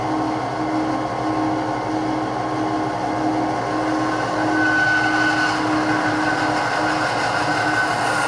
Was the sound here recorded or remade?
recorded